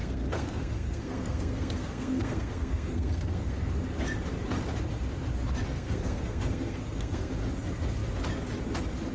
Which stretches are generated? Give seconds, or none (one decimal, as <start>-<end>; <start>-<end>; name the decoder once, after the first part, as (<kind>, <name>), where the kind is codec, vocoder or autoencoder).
0.0-3.7 (codec, SNAC); 5.7-7.3